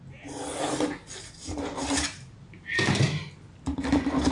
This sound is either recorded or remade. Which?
recorded